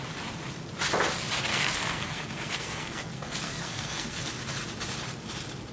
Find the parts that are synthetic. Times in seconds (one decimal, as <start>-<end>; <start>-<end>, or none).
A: 1.5-4.3